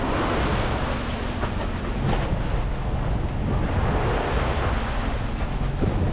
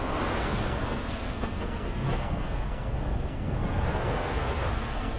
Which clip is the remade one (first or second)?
second